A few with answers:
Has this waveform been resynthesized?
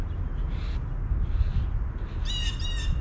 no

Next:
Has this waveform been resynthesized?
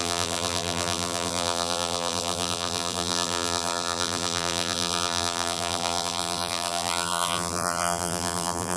yes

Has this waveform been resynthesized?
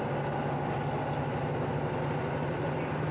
no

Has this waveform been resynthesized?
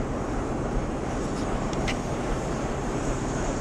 yes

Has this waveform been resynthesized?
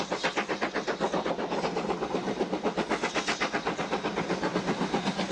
no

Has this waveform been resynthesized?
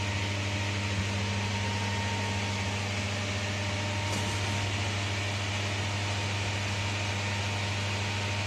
no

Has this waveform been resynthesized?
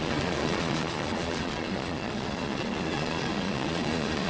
yes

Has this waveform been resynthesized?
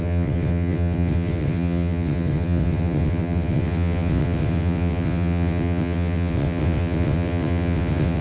yes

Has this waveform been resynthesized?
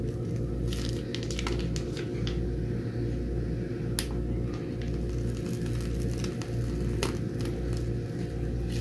no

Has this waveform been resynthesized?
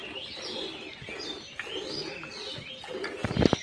no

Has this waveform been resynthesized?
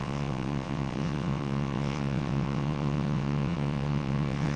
yes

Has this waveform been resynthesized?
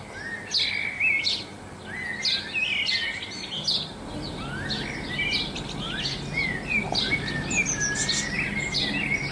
no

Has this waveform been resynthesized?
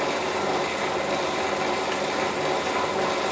no